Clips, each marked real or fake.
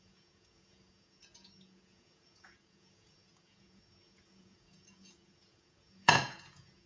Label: fake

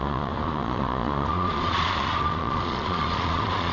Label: fake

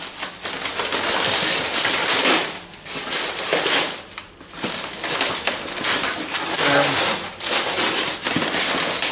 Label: real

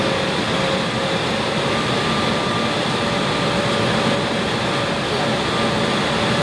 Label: real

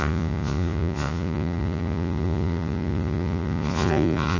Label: fake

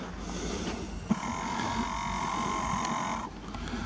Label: real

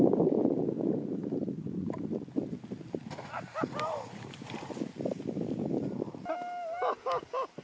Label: real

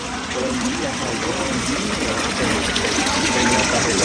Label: fake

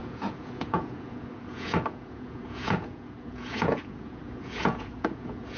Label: fake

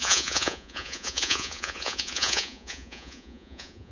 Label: fake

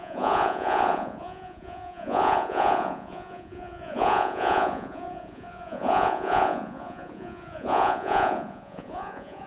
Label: fake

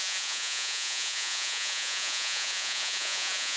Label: fake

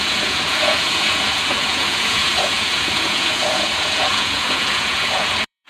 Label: fake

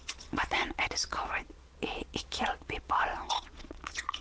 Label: fake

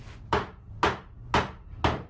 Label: real